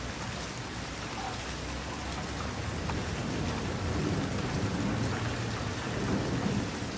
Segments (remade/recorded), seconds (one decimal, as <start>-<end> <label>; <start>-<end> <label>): 0.0-7.0 recorded